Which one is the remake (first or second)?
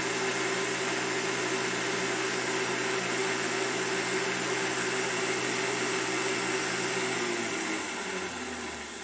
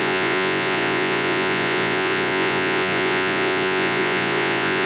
second